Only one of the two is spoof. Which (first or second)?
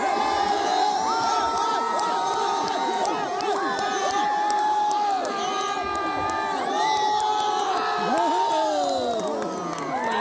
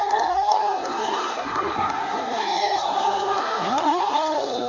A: second